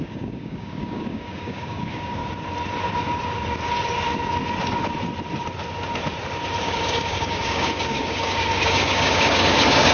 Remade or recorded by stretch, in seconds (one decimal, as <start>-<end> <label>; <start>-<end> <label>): 0.0-2.2 remade; 2.2-6.6 recorded; 6.6-9.9 remade